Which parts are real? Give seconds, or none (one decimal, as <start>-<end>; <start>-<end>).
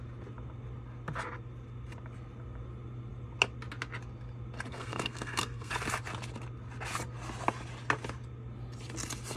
0.0-4.7; 5.7-9.4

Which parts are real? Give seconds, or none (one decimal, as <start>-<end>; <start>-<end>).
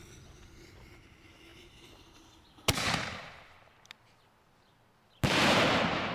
0.0-6.1